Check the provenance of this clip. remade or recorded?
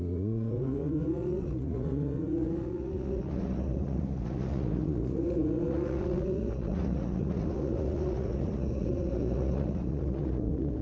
remade